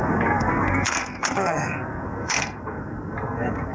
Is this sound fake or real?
fake